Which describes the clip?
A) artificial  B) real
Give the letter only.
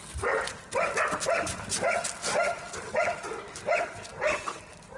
B